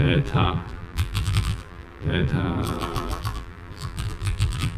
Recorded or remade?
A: remade